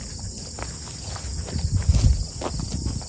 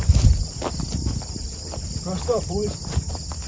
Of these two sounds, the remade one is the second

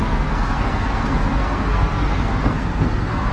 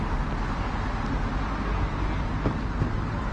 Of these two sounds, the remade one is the first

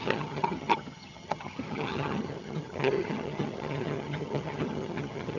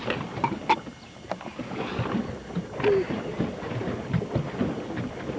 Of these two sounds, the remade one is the first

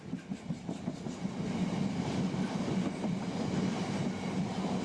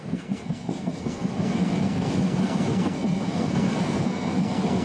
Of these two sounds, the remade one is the second